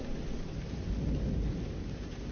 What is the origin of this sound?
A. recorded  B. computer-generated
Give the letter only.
A